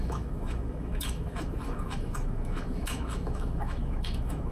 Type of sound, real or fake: fake